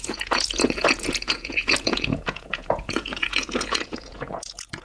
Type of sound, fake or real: fake